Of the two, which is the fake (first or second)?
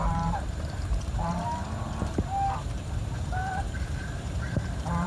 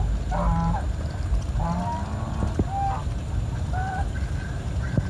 first